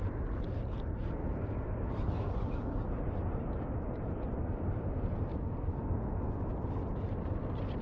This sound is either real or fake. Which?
real